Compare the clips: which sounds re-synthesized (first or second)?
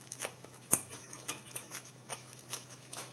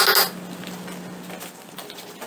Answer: first